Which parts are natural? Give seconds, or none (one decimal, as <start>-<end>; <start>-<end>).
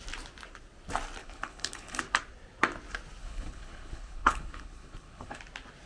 0.0-1.2; 2.0-3.2; 5.4-5.9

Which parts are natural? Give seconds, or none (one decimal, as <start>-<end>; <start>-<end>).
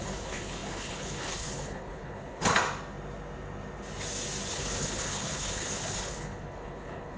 2.5-4.5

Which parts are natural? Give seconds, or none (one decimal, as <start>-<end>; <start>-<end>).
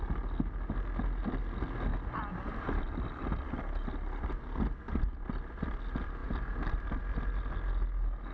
0.0-8.3